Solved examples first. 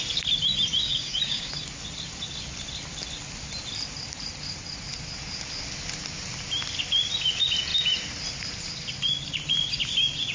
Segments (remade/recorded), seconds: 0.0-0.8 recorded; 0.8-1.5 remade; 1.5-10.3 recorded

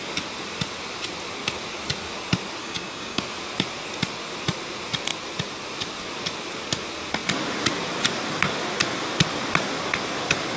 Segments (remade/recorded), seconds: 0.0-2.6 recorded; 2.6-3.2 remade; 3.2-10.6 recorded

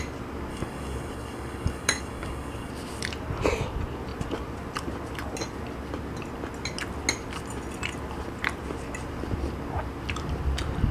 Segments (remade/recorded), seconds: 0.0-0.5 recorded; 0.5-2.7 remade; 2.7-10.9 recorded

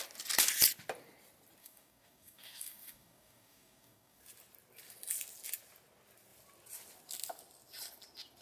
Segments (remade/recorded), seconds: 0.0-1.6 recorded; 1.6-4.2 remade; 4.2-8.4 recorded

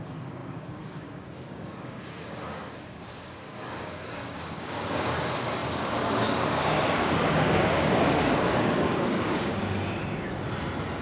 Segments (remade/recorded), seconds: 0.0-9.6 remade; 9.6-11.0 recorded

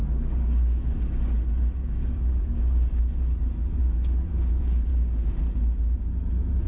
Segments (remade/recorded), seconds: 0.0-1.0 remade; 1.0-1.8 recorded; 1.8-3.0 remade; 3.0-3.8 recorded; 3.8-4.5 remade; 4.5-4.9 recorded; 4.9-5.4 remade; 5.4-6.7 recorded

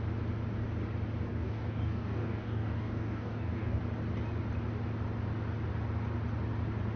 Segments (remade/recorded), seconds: 0.0-1.3 recorded; 1.3-3.8 remade; 3.8-7.0 recorded